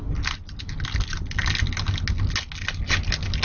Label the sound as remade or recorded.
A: recorded